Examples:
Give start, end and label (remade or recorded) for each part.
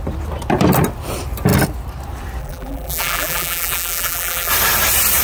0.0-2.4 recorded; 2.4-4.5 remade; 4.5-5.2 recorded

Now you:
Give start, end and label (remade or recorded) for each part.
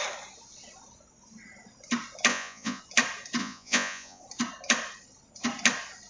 0.0-2.3 recorded; 2.3-2.8 remade; 2.8-3.4 recorded; 3.4-4.2 remade; 4.2-6.1 recorded